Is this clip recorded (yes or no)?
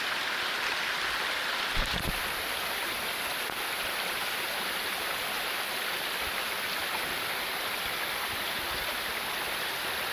yes